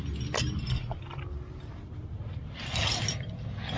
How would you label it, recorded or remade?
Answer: recorded